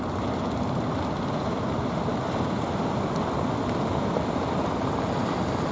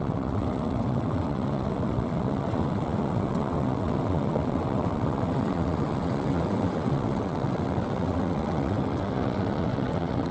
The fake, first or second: second